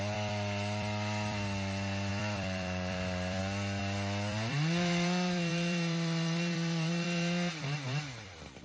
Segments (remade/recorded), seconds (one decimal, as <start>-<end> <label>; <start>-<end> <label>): 0.0-8.6 remade